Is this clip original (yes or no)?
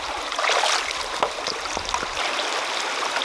yes